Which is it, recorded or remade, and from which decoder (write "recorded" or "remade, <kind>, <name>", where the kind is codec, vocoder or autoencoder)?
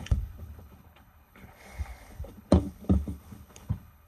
remade, codec, HILCodec